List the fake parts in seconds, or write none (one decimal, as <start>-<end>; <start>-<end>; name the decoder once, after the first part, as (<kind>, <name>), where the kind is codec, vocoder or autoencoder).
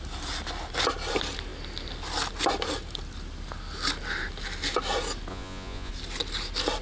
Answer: 5.3-5.9 (vocoder, Vocos)